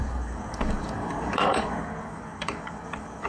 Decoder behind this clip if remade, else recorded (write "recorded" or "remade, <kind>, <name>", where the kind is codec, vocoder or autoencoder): remade, codec, DAC